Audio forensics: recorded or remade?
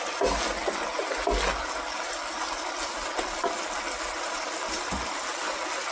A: recorded